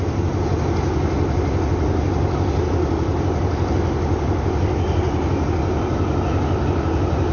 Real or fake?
real